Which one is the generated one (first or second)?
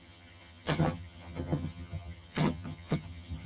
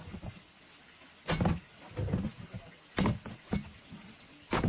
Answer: first